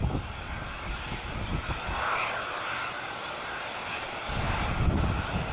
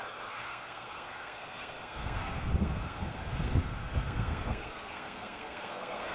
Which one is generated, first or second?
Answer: second